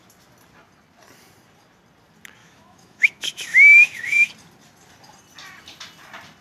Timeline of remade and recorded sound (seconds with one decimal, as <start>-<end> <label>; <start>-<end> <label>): 0.0-2.4 recorded; 2.4-4.3 remade; 4.3-6.4 recorded